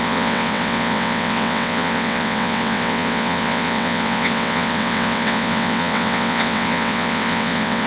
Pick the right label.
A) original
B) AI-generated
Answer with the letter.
B